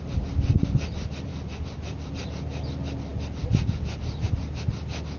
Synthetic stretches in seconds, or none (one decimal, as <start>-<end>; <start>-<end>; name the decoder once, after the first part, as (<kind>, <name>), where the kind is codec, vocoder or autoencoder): none